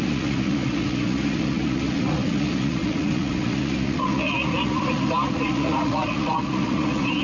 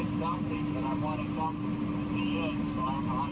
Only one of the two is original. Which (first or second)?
second